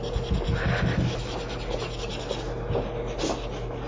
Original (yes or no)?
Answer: yes